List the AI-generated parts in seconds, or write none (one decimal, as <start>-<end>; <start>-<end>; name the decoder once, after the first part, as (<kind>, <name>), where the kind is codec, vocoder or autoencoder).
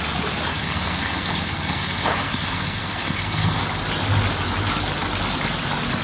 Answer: 0.5-3.6 (codec, SNAC)